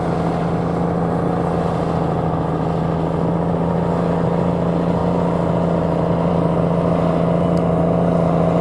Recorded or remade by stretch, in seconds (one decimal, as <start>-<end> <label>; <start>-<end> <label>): 0.0-8.6 recorded